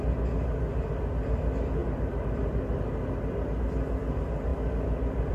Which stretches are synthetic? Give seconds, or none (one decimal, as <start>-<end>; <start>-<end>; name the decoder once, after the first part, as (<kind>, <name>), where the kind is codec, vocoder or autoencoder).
none